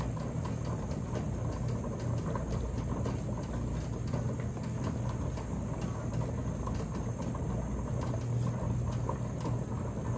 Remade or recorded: recorded